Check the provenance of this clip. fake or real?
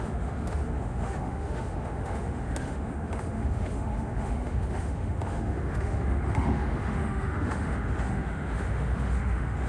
fake